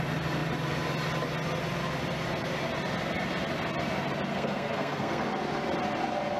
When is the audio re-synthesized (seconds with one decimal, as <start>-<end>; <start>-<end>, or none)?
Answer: 4.3-5.2